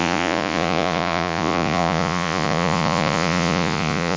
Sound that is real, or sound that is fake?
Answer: fake